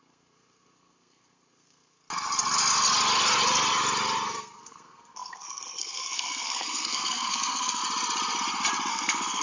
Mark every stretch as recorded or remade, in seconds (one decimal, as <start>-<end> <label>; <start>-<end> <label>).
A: 0.0-2.0 remade; 2.0-4.3 recorded; 4.3-7.8 remade; 7.8-8.9 recorded; 8.9-9.4 remade